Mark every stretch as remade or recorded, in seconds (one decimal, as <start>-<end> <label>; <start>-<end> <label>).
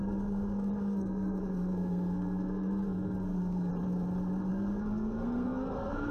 0.0-3.7 remade; 3.7-4.5 recorded; 4.5-6.1 remade